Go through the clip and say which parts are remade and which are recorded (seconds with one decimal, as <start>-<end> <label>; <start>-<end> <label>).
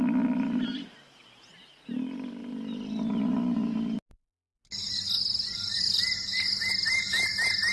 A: 0.0-7.7 recorded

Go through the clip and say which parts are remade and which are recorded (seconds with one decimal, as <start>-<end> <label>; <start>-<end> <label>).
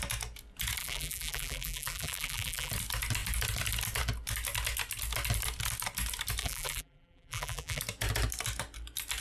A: 0.0-0.8 recorded; 0.8-2.7 remade; 2.7-6.4 recorded; 6.4-7.8 remade; 7.8-9.2 recorded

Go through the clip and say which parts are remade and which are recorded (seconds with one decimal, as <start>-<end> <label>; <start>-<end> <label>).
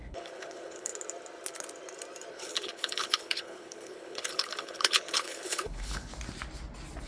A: 0.0-0.9 remade; 0.9-2.3 recorded; 2.3-6.1 remade; 6.1-7.1 recorded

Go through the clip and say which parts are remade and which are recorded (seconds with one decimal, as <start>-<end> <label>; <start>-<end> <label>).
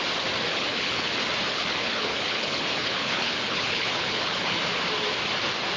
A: 0.0-0.5 recorded; 0.5-1.1 remade; 1.1-1.5 recorded; 1.5-4.6 remade; 4.6-5.8 recorded